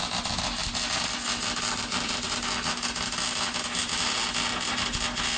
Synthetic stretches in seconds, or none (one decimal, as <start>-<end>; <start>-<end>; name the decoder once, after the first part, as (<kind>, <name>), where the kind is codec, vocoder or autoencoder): none